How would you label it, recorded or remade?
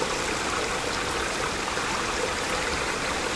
recorded